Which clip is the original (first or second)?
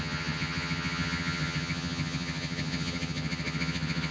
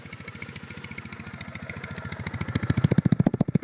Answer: second